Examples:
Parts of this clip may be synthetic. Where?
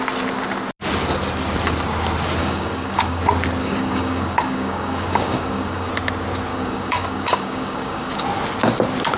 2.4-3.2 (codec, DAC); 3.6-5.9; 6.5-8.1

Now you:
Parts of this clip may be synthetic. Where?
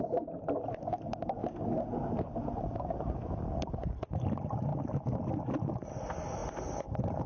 none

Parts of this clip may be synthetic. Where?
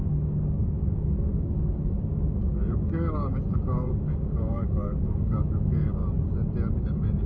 0.0-6.0 (codec, DAC); 6.8-7.3